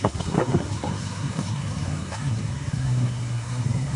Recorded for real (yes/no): no